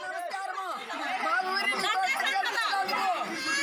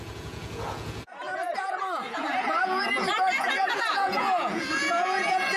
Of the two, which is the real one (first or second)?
first